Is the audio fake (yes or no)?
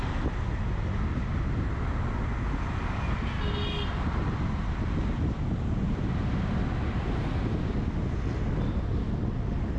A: no